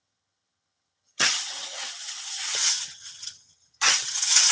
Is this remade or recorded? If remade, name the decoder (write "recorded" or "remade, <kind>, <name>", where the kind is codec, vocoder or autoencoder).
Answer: remade, vocoder, HiFi-GAN